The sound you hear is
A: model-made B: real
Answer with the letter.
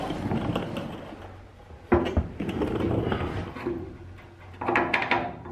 B